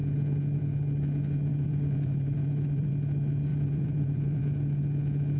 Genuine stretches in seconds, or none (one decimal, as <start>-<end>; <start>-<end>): 0.0-1.5; 2.9-3.5; 4.4-5.4